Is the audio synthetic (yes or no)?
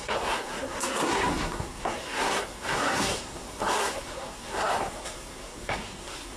yes